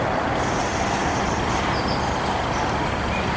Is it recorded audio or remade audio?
recorded